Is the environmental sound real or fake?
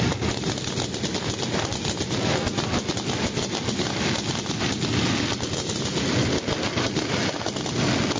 real